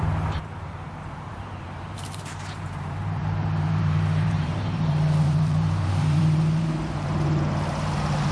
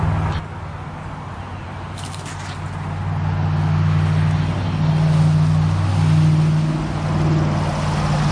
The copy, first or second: first